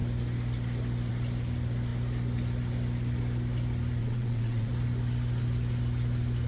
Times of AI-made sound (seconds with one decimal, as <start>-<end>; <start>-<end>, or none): 4.0-4.7